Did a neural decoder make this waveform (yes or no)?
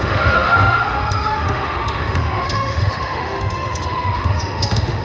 yes